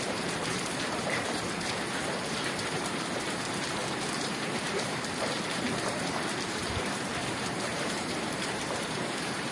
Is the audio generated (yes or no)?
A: yes